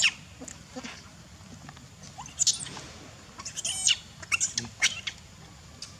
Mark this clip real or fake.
real